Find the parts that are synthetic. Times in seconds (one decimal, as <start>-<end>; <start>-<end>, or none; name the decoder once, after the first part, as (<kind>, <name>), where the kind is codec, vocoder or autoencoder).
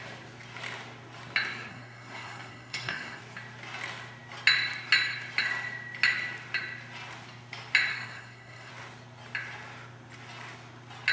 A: 1.7-3.2 (codec, SNAC); 7.9-8.7